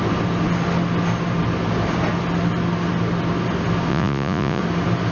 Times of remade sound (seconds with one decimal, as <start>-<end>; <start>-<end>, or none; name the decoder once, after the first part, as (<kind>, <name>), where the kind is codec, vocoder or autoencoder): 3.9-4.6 (vocoder, Vocos)